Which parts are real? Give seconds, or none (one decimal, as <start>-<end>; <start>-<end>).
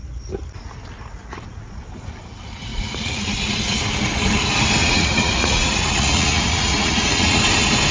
0.0-1.0; 1.8-2.7; 3.5-4.8; 7.4-7.9